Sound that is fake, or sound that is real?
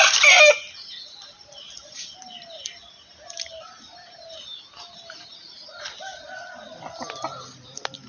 real